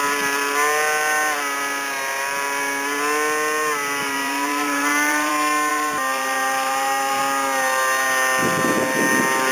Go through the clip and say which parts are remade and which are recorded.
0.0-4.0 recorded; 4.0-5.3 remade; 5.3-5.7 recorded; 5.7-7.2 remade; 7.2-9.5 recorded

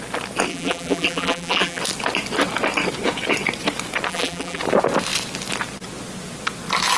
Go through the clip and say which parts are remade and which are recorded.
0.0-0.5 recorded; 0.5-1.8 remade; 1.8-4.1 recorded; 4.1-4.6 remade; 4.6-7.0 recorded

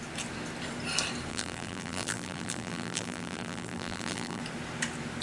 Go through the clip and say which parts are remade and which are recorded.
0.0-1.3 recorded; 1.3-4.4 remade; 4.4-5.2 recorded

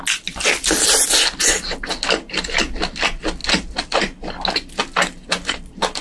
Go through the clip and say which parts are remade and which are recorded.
0.0-6.0 recorded

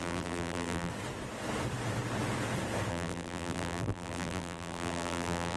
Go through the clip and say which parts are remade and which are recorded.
0.0-0.9 remade; 0.9-2.9 recorded; 2.9-5.6 remade

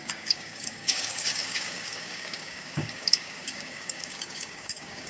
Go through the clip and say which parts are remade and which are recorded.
0.0-5.1 remade

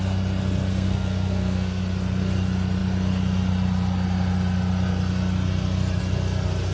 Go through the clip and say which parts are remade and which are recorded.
0.0-0.7 recorded; 0.7-1.8 remade; 1.8-6.7 recorded

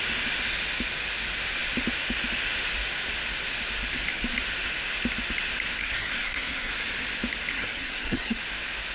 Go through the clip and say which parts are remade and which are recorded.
0.0-5.8 recorded; 5.8-6.7 remade; 6.7-7.5 recorded; 7.5-8.4 remade; 8.4-8.9 recorded